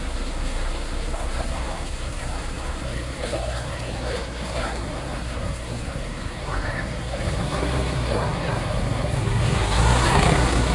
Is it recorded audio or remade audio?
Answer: remade